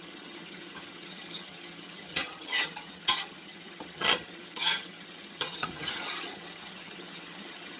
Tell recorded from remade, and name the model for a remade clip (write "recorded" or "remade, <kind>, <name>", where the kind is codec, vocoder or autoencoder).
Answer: remade, vocoder, HiFi-GAN